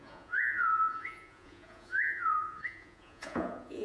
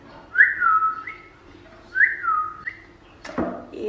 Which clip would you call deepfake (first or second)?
first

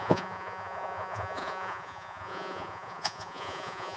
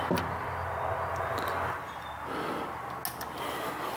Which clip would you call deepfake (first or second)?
first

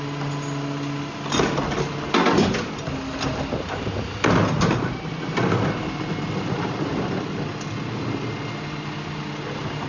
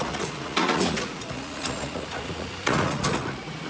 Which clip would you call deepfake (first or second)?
second